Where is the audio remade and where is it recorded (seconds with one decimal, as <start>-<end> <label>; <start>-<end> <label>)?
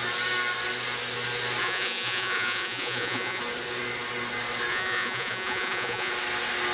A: 0.0-1.6 recorded; 1.6-3.4 remade; 3.4-4.7 recorded; 4.7-6.1 remade; 6.1-6.7 recorded